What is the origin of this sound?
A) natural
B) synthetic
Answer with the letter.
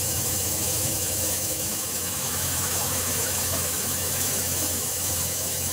B